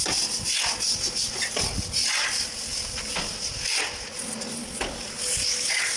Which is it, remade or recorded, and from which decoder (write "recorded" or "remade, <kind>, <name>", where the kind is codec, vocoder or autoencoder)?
recorded